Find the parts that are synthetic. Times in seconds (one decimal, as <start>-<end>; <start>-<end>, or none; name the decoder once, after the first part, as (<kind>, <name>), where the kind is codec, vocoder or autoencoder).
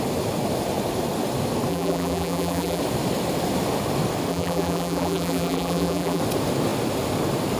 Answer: 1.7-2.8 (vocoder, BigVGAN v2); 4.3-6.2